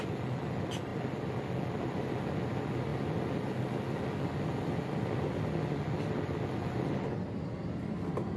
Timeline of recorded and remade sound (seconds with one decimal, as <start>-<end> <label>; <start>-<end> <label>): 0.0-8.4 recorded